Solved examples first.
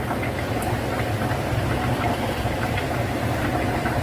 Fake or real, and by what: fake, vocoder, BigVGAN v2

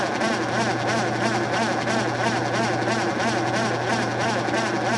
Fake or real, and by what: real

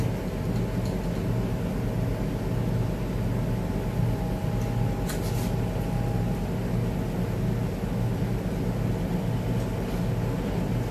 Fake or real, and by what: real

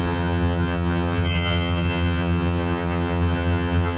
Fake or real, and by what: fake, vocoder, HiFi-GAN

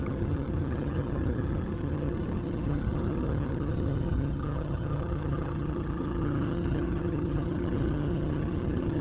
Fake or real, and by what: fake, vocoder, HiFi-GAN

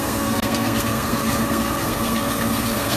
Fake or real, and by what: fake, codec, SNAC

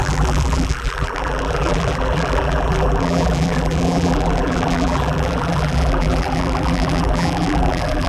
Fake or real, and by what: fake, vocoder, BigVGAN v2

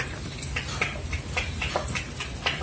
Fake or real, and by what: real